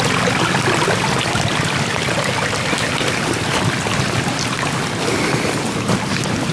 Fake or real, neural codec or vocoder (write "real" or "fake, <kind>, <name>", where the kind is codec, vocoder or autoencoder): real